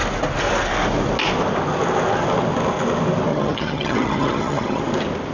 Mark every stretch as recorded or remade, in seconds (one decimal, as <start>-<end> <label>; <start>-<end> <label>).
0.0-3.3 recorded; 3.3-4.8 remade; 4.8-5.3 recorded